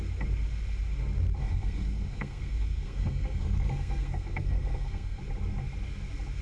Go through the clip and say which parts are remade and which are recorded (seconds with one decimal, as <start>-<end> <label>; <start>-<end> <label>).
0.0-1.4 recorded; 1.4-5.2 remade; 5.2-6.4 recorded